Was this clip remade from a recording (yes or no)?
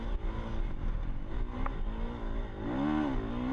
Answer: no